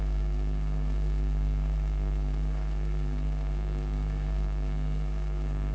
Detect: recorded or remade remade